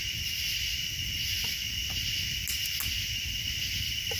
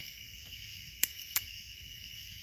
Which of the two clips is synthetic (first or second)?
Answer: second